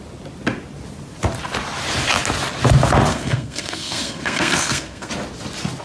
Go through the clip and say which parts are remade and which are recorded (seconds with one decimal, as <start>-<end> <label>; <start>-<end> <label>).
0.0-3.1 recorded; 3.1-5.1 remade; 5.1-5.8 recorded